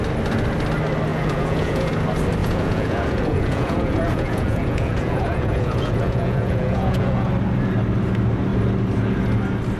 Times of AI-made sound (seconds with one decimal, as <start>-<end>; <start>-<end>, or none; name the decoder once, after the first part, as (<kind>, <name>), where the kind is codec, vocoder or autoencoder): 1.1-1.9 (vocoder, Vocos); 2.4-7.3